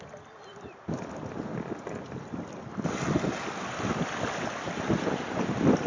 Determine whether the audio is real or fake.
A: real